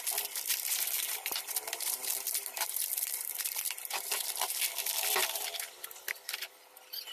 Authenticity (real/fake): fake